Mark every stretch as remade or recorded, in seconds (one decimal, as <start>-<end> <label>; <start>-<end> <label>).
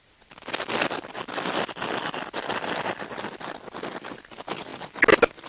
0.0-5.5 recorded